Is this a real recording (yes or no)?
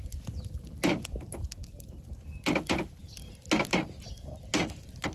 yes